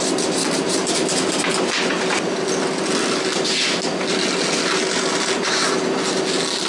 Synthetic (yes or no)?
no